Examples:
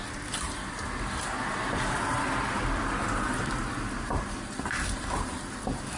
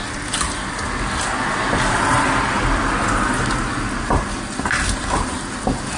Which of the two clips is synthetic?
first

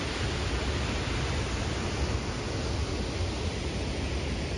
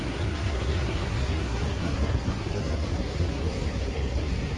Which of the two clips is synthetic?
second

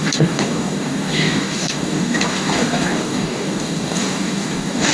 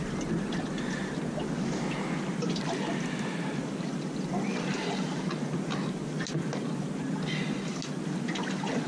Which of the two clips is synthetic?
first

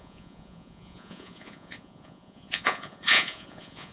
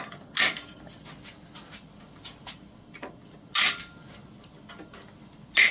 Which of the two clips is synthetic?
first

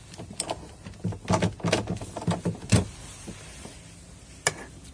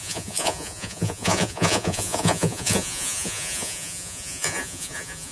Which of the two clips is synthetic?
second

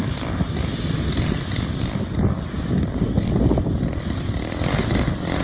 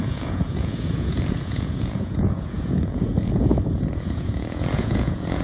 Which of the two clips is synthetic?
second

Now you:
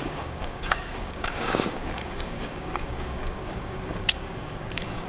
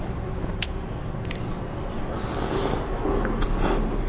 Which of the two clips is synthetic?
first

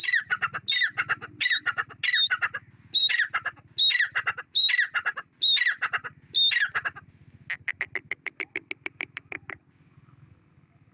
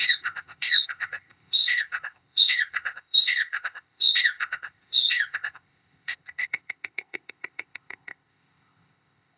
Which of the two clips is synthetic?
second